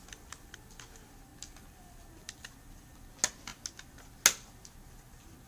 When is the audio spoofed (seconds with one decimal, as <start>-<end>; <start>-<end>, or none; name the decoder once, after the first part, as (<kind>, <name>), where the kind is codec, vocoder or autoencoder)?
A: none